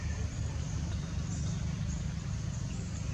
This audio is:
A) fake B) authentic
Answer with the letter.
B